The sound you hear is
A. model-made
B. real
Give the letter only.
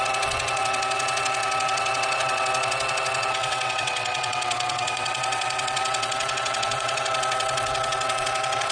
A